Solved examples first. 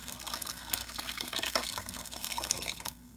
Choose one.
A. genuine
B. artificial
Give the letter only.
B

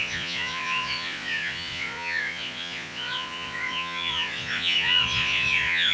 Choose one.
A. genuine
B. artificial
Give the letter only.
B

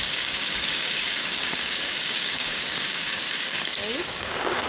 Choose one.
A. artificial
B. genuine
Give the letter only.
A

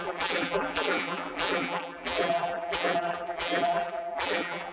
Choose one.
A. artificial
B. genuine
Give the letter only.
A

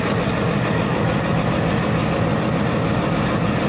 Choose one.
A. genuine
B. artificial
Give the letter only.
A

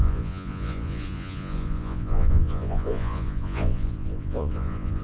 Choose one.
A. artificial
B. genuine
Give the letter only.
A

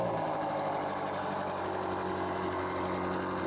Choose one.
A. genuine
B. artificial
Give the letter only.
A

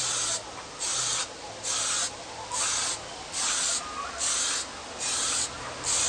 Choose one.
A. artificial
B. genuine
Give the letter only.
B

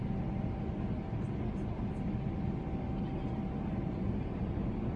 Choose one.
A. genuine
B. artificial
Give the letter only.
A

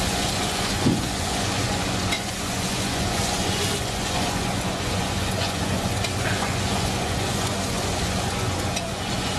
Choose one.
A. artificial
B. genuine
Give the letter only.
A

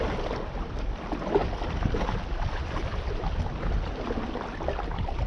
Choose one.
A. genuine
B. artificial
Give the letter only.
A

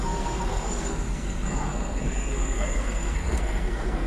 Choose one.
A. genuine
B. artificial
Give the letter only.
B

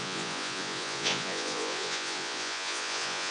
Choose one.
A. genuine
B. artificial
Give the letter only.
B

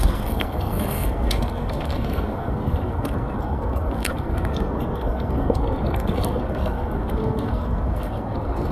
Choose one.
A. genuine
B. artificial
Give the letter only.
B